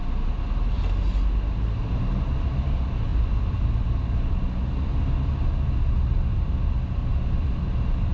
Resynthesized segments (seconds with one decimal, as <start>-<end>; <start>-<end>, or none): 3.1-3.7; 7.0-7.6